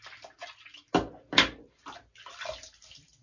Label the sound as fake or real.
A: real